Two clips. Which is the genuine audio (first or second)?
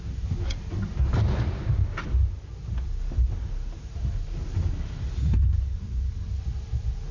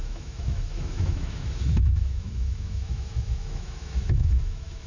first